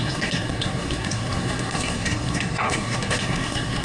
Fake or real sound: fake